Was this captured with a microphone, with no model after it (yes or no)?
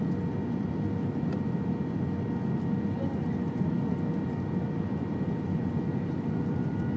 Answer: yes